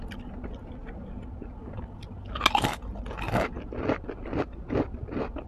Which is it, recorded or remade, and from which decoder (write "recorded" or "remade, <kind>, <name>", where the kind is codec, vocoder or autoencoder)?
recorded